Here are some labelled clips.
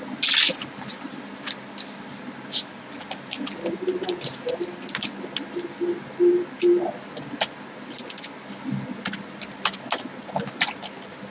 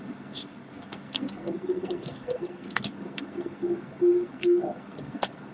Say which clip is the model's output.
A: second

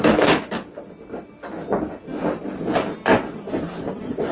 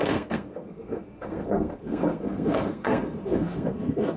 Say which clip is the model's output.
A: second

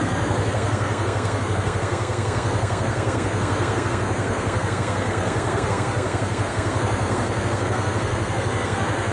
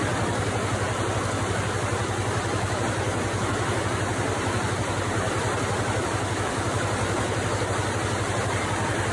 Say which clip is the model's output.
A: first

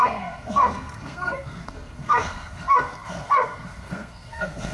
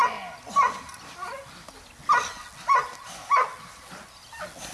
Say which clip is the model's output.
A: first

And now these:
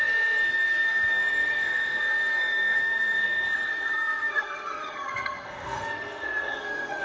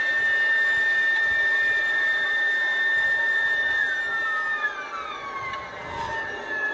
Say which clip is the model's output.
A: first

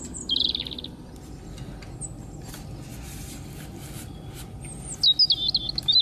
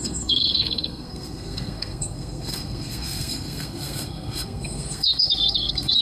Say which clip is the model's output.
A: second